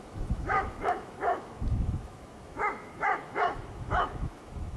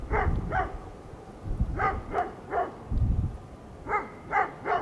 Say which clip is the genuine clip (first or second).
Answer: second